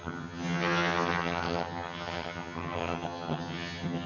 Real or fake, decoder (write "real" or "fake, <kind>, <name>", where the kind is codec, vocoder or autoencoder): fake, vocoder, HiFi-GAN